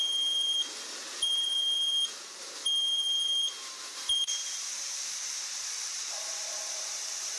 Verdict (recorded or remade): remade